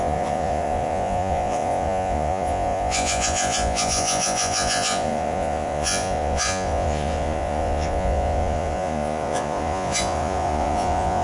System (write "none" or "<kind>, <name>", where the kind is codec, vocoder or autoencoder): vocoder, Vocos